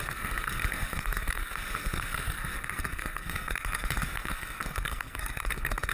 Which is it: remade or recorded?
remade